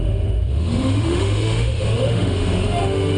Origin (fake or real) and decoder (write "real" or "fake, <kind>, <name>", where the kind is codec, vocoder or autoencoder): fake, autoencoder, DAC-VAE